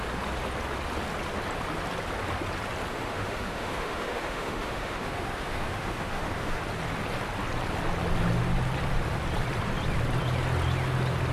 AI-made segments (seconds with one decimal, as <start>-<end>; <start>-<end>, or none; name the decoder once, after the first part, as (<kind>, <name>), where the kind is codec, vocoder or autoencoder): 2.9-6.6 (autoencoder, DAC-VAE)